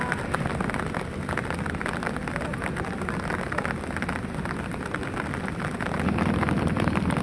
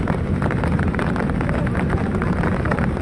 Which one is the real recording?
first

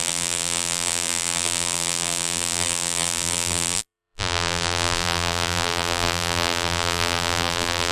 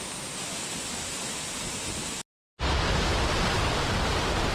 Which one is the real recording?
second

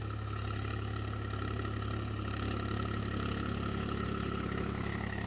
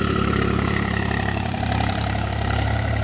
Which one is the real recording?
first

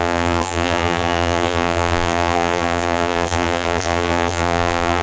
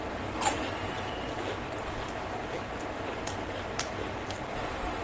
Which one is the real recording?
second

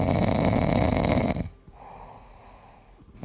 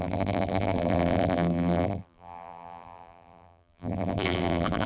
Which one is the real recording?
first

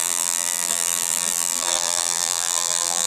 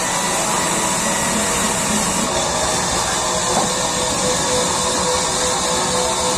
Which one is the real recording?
second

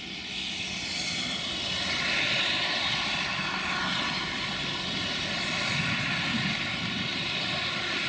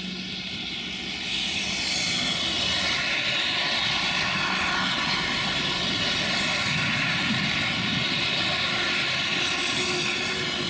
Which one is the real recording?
second